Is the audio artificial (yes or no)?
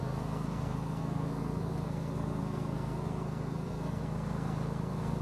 yes